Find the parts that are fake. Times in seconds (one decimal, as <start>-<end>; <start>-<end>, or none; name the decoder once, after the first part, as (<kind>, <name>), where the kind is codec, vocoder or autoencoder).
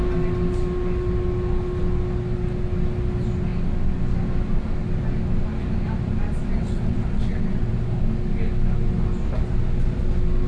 6.4-7.7 (vocoder, WaveNeXt)